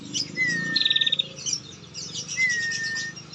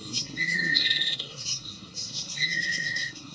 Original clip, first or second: first